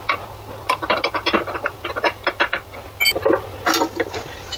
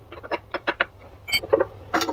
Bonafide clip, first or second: first